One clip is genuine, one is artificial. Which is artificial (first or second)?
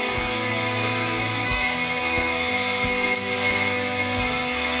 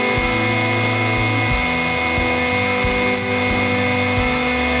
first